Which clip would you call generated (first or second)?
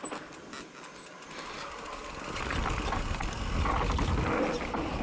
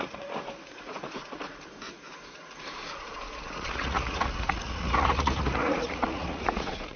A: second